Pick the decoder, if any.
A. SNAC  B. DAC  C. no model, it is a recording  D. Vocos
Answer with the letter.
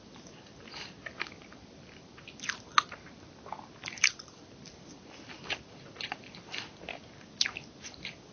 C